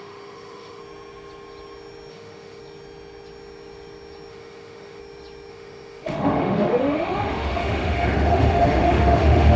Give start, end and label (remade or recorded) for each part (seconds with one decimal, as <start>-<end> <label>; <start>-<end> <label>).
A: 0.0-0.8 remade; 0.8-2.1 recorded; 2.1-2.6 remade; 2.6-4.3 recorded; 4.3-5.0 remade; 5.0-5.5 recorded; 5.5-9.6 remade